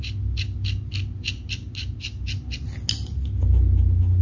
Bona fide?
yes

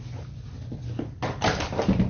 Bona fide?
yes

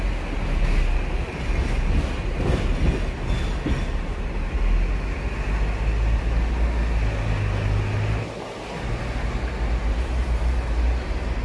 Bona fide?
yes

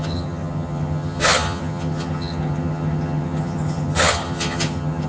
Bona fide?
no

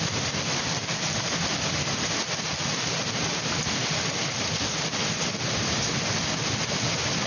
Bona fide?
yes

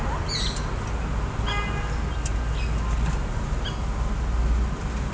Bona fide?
yes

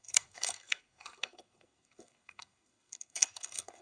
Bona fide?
no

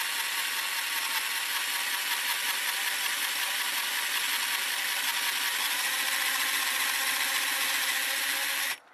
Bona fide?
yes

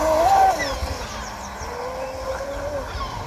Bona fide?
yes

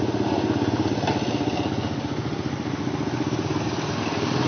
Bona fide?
yes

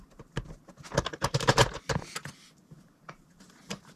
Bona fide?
yes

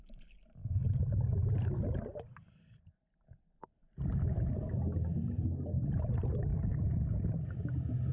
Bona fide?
yes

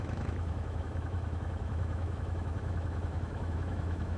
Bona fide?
no